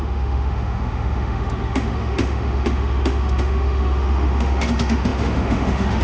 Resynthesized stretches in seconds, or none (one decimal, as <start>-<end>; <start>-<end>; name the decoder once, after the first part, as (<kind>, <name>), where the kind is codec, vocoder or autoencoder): 0.0-6.0 (autoencoder, DAC-VAE)